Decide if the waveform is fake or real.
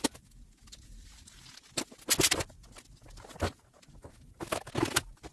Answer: real